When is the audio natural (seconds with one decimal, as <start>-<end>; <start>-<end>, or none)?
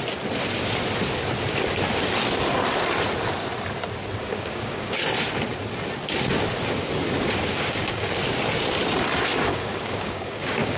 0.0-4.2; 5.0-7.5; 8.1-9.5